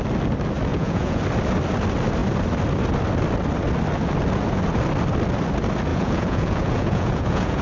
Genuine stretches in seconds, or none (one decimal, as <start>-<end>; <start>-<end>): 0.0-0.7; 1.2-5.9